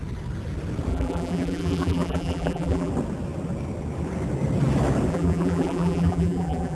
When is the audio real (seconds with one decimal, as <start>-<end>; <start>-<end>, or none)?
0.0-0.9; 2.9-5.1